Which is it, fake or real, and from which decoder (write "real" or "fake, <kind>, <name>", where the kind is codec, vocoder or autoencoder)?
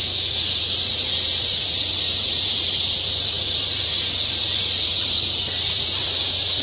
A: fake, vocoder, Vocos